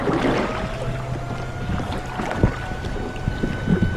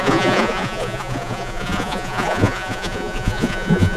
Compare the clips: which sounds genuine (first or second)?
first